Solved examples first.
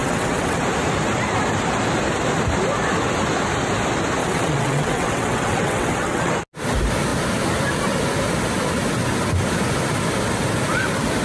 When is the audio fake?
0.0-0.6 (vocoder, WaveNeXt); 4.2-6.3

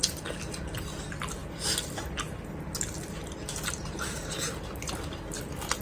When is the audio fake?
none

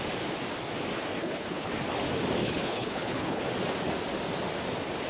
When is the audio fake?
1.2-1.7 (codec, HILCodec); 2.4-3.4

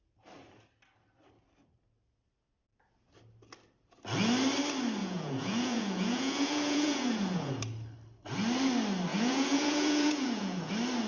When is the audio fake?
5.0-7.5 (vocoder, Vocos); 9.1-10.7